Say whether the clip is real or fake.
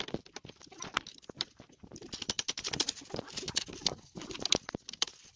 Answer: real